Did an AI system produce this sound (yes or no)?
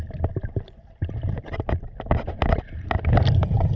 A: no